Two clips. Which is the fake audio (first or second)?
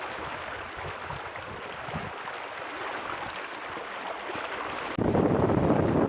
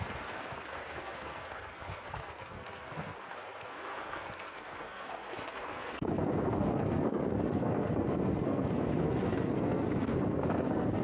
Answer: second